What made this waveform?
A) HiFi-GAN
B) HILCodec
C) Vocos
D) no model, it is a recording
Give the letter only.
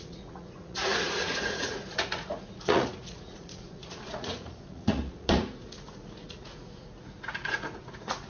C